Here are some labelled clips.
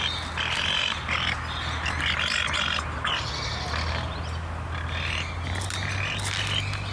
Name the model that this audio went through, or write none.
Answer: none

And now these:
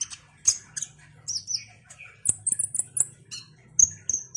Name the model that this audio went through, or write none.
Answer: none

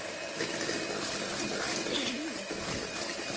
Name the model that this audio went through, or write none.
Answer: none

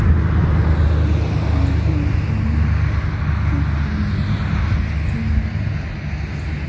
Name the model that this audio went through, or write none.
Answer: none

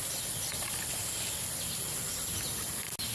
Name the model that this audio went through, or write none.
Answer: none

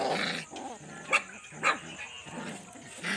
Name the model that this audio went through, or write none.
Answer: none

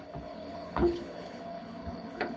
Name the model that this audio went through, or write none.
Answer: codec, HILCodec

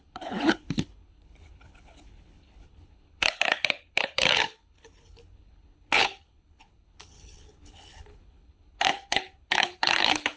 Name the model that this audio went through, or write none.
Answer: codec, HILCodec